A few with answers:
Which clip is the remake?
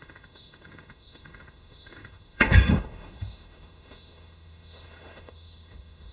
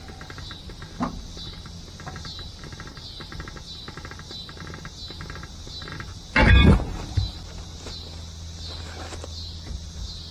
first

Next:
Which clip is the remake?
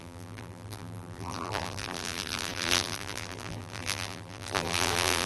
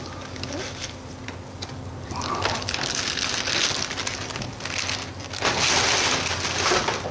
first